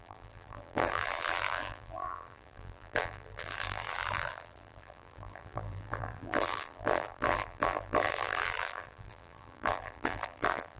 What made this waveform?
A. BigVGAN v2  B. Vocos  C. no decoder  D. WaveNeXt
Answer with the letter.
A